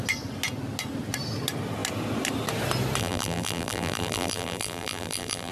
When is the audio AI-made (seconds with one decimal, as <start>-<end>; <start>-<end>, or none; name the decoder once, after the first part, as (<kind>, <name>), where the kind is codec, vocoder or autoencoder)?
3.0-5.5 (vocoder, BigVGAN v2)